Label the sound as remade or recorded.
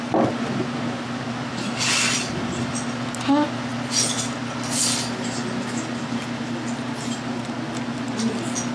recorded